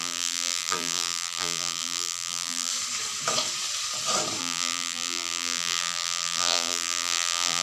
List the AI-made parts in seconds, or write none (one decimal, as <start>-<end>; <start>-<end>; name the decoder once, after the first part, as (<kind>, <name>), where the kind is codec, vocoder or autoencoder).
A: 0.0-2.7 (vocoder, BigVGAN v2); 4.4-7.6